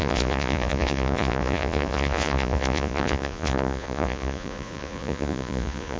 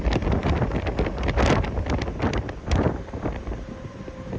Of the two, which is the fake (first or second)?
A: first